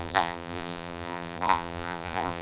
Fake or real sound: fake